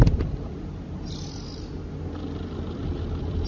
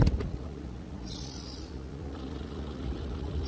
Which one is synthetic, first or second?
second